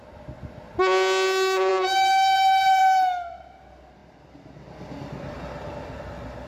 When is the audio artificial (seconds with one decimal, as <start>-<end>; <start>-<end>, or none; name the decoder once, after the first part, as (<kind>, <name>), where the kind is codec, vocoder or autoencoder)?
none